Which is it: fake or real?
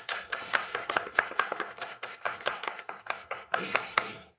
fake